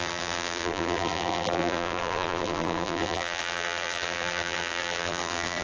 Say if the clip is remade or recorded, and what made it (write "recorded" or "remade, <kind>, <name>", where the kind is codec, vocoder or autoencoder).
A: remade, vocoder, BigVGAN v2